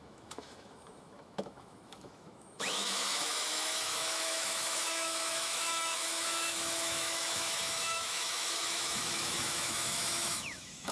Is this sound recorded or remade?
remade